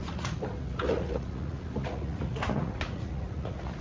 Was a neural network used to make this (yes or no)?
yes